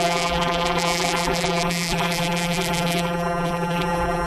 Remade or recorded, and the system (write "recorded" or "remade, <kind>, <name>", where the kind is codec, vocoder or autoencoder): remade, vocoder, BigVGAN v2